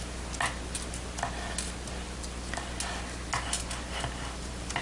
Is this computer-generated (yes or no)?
no